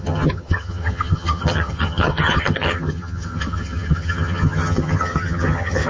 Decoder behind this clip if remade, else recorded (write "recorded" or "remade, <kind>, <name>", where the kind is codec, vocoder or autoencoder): remade, vocoder, HiFi-GAN